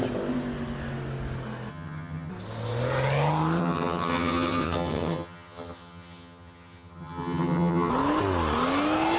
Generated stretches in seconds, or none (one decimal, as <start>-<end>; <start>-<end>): 1.7-2.3; 3.6-7.9

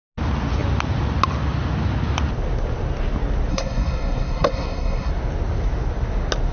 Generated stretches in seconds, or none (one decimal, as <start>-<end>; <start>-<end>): 3.5-5.1

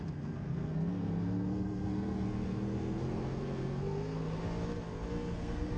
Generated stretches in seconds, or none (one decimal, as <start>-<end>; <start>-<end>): 0.0-4.4; 5.1-5.8